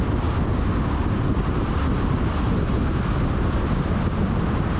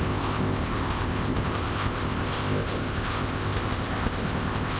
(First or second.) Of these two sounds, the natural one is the first